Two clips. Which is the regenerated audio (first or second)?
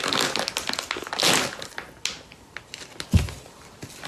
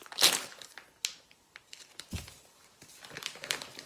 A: second